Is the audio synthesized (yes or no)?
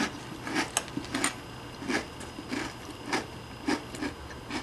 no